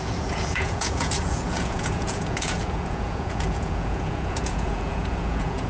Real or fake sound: fake